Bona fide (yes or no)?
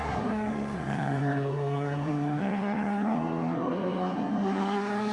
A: no